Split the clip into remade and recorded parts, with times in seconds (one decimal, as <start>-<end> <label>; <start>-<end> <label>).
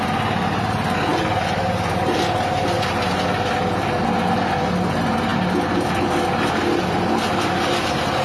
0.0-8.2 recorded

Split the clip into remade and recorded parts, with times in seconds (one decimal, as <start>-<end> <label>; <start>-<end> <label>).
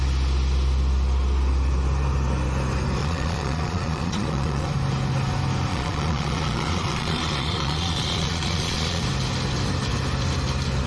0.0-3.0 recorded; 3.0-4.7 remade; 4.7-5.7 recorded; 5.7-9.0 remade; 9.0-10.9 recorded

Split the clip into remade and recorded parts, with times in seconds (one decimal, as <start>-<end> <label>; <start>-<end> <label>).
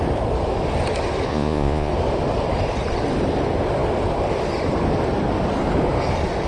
0.0-1.3 recorded; 1.3-1.9 remade; 1.9-6.5 recorded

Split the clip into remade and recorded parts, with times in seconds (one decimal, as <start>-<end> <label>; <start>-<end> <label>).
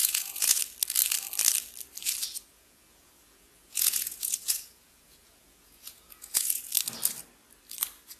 0.0-0.6 remade; 0.6-2.5 recorded; 2.5-6.6 remade; 6.6-8.2 recorded